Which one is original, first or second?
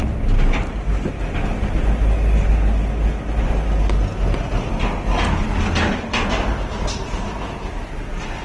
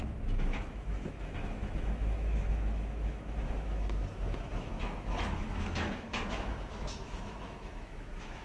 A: first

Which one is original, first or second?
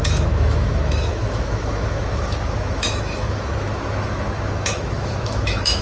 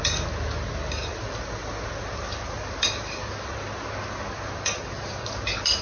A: second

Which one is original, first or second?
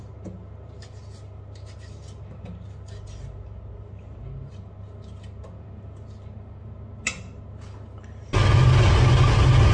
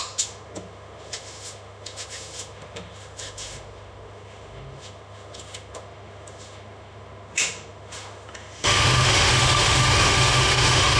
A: first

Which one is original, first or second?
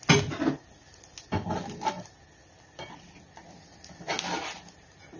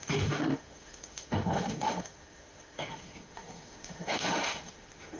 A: first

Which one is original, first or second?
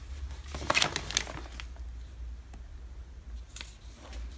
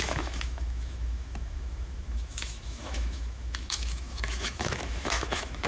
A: first